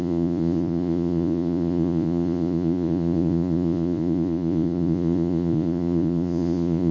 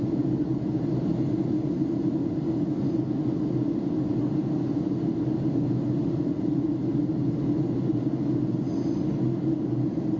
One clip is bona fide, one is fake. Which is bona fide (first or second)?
second